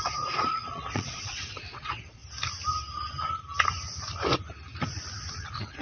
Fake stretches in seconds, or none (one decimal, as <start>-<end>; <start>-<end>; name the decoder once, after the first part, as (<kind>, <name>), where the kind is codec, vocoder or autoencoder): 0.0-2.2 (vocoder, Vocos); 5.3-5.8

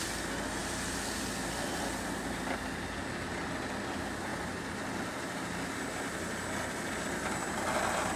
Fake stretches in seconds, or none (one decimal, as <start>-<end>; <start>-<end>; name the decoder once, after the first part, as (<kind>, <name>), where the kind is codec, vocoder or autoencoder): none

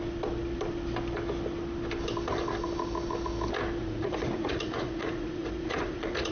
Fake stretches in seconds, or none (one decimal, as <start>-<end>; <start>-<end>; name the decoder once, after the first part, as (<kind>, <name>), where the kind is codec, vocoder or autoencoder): 3.8-6.3 (vocoder, Vocos)

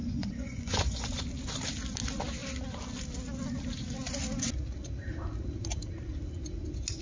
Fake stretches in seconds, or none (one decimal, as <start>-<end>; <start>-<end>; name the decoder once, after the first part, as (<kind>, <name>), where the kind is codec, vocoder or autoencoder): 0.0-1.1 (vocoder, Vocos)

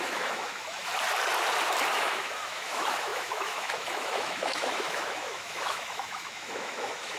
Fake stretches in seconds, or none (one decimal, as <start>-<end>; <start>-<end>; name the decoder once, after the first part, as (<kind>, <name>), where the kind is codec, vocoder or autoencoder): 0.0-0.9 (autoencoder, DAC-VAE); 1.9-7.2